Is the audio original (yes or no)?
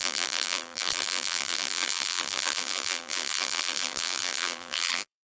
no